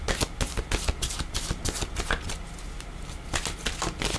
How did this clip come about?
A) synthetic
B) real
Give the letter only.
B